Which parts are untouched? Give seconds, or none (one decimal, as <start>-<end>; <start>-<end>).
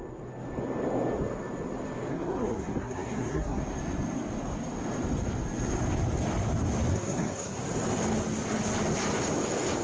0.0-2.1; 3.6-6.9; 7.6-9.8